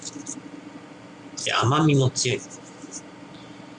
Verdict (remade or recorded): remade